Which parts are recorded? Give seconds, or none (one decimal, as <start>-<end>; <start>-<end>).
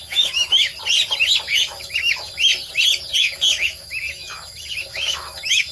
0.7-1.5; 2.5-3.2